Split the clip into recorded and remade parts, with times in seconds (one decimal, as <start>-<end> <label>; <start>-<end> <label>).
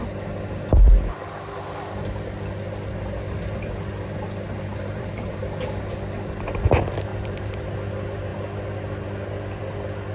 0.0-4.7 recorded; 4.7-5.4 remade; 5.4-7.1 recorded; 7.1-7.7 remade; 7.7-10.1 recorded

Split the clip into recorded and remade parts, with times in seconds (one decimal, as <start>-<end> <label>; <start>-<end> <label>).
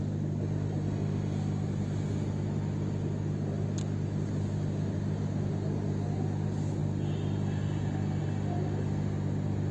0.0-9.7 recorded